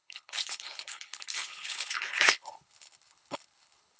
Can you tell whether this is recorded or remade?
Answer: remade